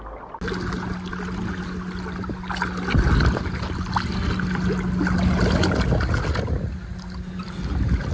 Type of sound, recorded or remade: recorded